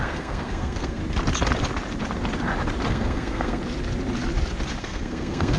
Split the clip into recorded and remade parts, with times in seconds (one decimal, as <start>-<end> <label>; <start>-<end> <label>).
0.0-1.0 remade; 1.0-2.9 recorded; 2.9-3.6 remade; 3.6-4.8 recorded; 4.8-5.6 remade